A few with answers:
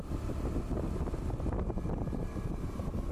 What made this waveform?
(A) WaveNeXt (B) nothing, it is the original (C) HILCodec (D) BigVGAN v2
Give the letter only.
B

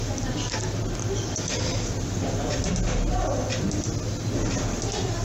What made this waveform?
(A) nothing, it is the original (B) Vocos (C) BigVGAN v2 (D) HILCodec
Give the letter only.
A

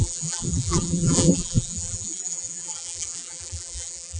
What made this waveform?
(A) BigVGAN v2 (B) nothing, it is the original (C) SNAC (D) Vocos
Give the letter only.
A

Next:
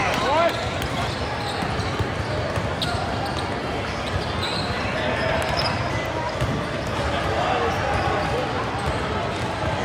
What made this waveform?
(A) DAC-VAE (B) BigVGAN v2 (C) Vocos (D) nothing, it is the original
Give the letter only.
D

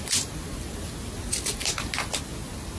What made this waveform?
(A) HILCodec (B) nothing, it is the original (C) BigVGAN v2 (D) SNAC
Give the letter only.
B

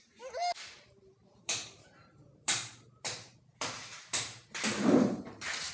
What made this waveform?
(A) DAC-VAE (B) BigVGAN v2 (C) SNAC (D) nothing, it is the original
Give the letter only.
B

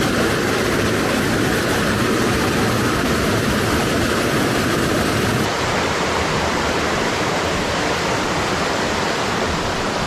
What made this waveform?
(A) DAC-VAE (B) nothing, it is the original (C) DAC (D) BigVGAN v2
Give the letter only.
D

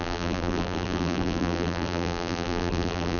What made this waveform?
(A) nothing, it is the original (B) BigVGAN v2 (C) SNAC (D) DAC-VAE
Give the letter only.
B